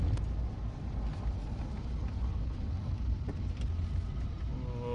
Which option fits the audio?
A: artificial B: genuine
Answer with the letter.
B